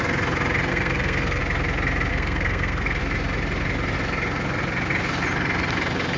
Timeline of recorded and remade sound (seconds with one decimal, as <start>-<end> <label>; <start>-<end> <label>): 0.0-0.7 recorded; 0.7-1.4 remade; 1.4-2.1 recorded; 2.1-3.0 remade; 3.0-6.2 recorded